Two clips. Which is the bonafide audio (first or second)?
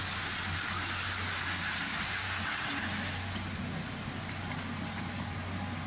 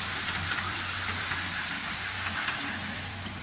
first